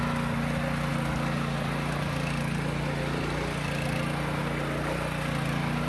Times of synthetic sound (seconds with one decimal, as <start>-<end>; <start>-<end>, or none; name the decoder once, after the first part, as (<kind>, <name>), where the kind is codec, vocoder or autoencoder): none